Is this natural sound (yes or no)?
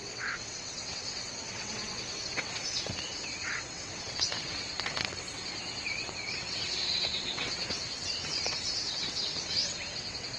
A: no